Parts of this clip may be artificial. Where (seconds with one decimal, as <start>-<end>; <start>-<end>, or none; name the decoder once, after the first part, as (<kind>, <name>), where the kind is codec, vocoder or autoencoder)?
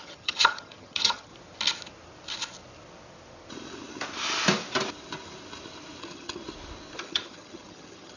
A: 0.0-1.3 (vocoder, HiFi-GAN); 6.0-6.4; 7.0-8.2